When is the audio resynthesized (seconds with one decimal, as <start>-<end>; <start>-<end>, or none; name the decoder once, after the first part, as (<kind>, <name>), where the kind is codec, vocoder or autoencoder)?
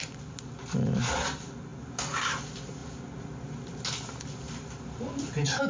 none